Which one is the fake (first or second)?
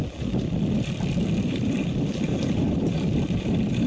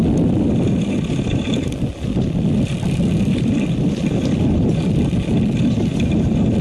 first